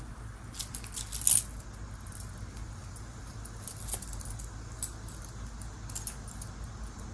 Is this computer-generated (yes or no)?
no